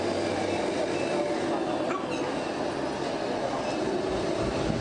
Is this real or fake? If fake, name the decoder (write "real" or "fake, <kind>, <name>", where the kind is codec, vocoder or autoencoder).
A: real